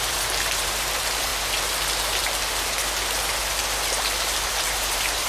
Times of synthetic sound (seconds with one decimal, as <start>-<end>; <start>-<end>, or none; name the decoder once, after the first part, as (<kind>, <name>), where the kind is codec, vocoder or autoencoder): 0.0-1.3 (vocoder, BigVGAN v2); 4.5-5.3